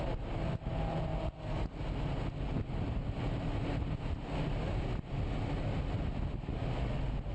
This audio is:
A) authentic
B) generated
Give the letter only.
A